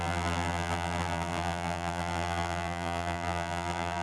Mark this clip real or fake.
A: fake